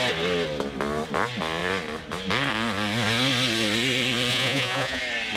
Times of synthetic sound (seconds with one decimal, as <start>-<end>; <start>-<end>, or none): 4.3-5.0

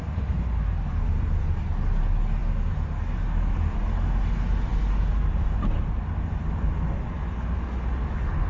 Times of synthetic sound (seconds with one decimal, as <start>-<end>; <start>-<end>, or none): none